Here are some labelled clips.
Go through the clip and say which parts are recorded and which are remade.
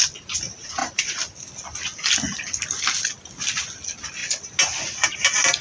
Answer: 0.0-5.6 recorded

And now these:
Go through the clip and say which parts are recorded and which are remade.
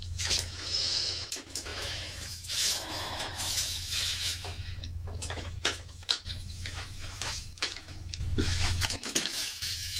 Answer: 0.0-10.0 remade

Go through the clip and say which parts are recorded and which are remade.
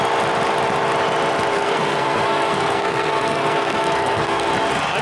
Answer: 0.0-1.5 recorded; 1.5-4.5 remade; 4.5-5.0 recorded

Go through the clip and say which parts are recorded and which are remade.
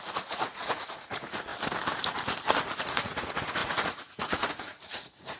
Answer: 0.0-1.5 remade; 1.5-2.8 recorded; 2.8-5.4 remade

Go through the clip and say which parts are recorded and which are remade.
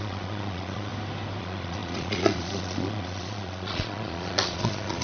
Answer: 0.0-0.9 remade; 0.9-1.4 recorded; 1.4-5.0 remade